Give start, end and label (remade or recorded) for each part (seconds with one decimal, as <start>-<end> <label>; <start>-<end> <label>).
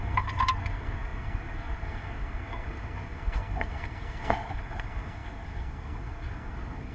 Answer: 0.0-6.9 remade